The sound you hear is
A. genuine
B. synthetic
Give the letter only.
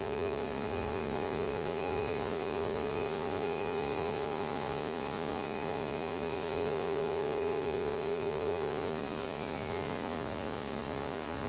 B